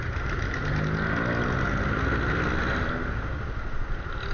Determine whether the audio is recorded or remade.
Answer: recorded